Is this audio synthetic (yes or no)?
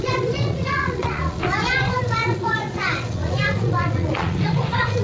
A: yes